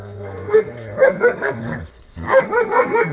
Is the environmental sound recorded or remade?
remade